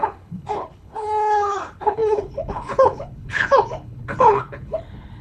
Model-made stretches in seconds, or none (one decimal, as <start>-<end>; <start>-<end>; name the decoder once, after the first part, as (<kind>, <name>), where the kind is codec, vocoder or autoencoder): 0.0-5.2 (codec, HILCodec)

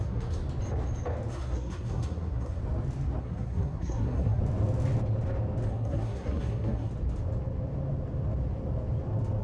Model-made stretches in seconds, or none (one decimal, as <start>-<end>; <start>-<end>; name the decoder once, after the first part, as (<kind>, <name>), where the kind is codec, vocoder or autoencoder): 0.0-0.4 (codec, SNAC); 1.3-2.6; 3.2-4.4; 5.7-6.9

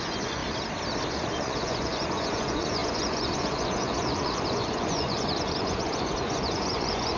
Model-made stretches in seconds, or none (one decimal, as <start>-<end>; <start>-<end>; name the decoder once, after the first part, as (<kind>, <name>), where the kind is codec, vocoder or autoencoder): 0.0-0.4 (vocoder, Vocos); 1.1-7.2

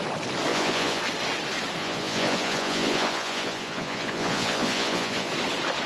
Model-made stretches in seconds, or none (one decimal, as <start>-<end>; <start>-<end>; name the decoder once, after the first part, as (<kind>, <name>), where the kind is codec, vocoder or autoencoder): 0.5-1.0 (vocoder, Vocos); 1.8-5.3

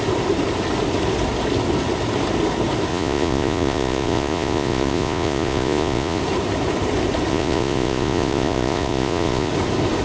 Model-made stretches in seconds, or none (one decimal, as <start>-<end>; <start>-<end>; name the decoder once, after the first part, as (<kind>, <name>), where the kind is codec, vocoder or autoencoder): 2.9-6.2 (vocoder, Vocos); 7.3-9.5